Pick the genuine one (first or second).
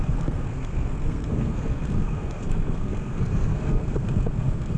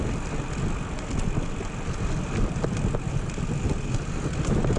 second